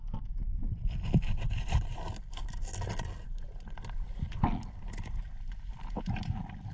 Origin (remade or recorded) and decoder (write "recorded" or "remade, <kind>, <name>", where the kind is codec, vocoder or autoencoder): recorded